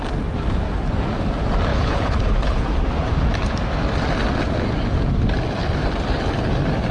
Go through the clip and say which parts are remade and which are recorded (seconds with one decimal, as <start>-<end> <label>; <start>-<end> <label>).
0.0-1.7 recorded; 1.7-2.8 remade; 2.8-6.9 recorded